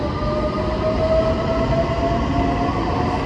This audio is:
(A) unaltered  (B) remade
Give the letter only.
A